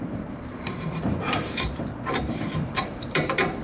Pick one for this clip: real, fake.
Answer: fake